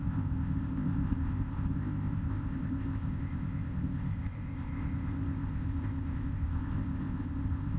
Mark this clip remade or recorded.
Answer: remade